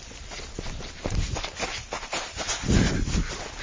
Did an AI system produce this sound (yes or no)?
no